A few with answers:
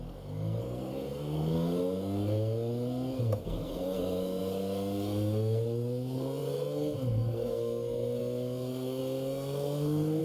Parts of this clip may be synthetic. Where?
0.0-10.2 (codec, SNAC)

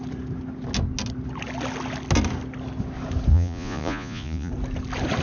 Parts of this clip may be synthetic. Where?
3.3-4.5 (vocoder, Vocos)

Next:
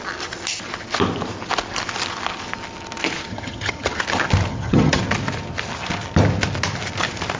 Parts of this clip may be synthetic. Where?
3.3-4.0 (vocoder, HiFi-GAN); 4.5-5.0

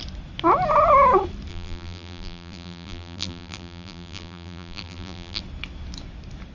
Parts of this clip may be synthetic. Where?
1.5-5.4 (vocoder, BigVGAN v2)

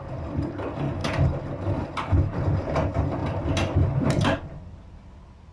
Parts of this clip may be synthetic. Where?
none

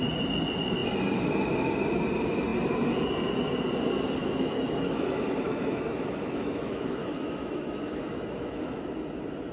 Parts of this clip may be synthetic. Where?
4.2-8.8 (autoencoder, DAC-VAE)

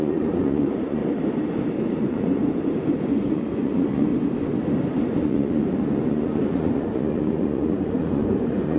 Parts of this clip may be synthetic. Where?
0.0-1.0 (vocoder, Vocos); 2.0-2.4; 3.0-4.1; 5.2-8.8